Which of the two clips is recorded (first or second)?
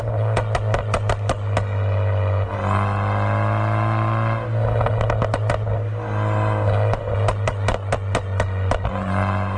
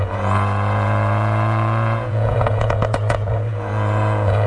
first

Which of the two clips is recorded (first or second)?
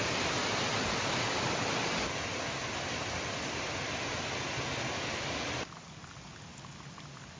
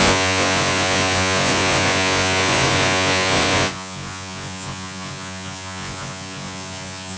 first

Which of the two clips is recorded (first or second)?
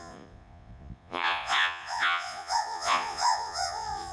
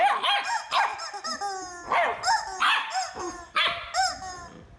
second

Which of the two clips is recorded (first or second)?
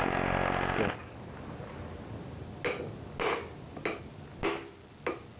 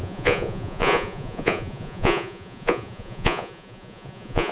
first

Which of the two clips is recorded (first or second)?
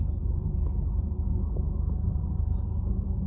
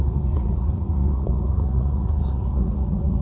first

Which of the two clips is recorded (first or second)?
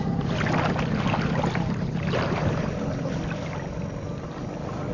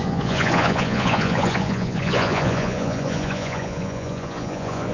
first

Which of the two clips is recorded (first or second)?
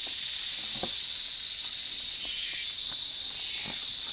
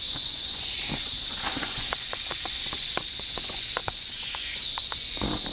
first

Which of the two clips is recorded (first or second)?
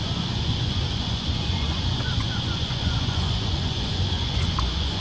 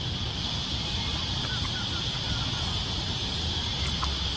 second